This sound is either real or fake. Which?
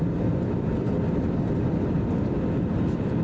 real